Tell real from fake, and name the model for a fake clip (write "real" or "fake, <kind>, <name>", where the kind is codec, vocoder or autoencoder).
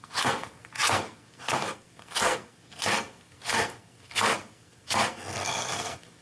fake, codec, SNAC